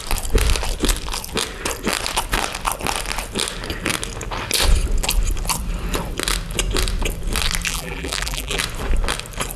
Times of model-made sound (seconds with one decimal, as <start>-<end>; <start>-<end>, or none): 7.7-8.6